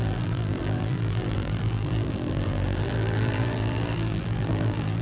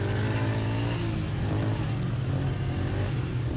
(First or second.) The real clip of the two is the second